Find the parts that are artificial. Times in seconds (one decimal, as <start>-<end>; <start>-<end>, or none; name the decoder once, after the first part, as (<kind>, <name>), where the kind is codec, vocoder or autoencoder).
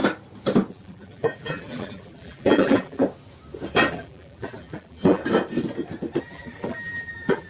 0.7-3.0 (vocoder, BigVGAN v2); 3.9-5.2; 6.2-7.5